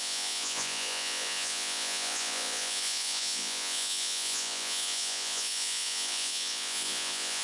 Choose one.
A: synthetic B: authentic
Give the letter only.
A